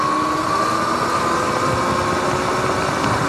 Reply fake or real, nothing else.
real